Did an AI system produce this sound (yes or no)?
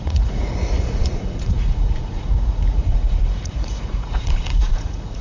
yes